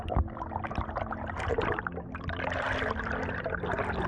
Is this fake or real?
real